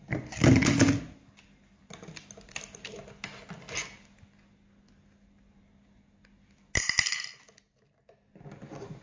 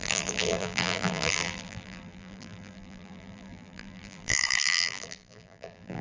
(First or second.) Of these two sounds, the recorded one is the first